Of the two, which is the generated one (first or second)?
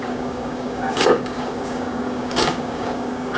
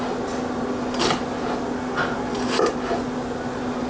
first